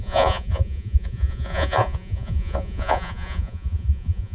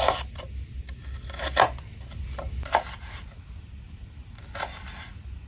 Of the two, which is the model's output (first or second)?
first